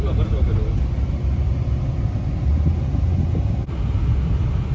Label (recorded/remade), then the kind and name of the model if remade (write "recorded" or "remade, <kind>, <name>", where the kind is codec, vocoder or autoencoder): recorded